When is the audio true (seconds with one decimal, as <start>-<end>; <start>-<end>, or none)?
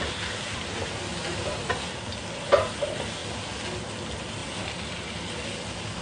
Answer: 0.0-6.0